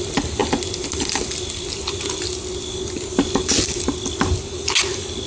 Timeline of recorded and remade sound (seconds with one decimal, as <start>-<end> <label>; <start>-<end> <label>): 0.0-5.3 recorded

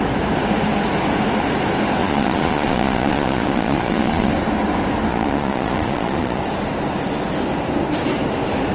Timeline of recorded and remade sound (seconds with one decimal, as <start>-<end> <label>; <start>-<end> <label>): 0.0-2.0 recorded; 2.0-4.3 remade; 4.3-5.1 recorded; 5.1-6.4 remade; 6.4-8.7 recorded

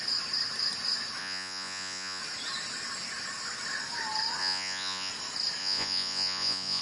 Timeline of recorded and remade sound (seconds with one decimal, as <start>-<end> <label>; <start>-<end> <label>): 0.0-1.2 recorded; 1.2-2.2 remade; 2.2-4.4 recorded; 4.4-5.1 remade; 5.1-5.6 recorded; 5.6-6.8 remade

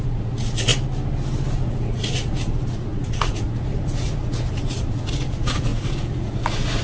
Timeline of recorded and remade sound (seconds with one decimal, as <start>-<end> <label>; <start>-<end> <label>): 0.0-0.7 remade; 0.7-1.5 recorded; 1.5-6.8 remade

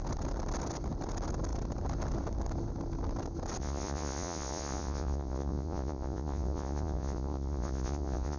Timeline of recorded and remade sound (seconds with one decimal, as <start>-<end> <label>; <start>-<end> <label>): 0.0-3.6 recorded; 3.6-8.4 remade

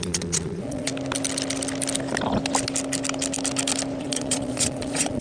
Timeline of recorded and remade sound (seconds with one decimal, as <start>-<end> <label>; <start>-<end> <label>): 0.0-0.9 remade; 0.9-4.0 recorded; 4.0-5.2 remade

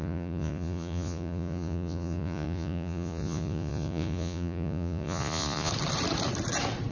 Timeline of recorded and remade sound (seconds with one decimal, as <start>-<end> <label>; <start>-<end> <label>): 0.0-5.7 remade; 5.7-6.9 recorded